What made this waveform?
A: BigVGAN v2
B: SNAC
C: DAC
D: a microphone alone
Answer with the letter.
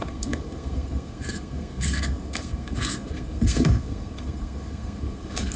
B